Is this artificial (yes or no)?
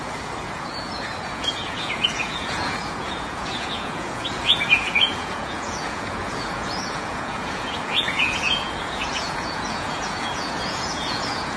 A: yes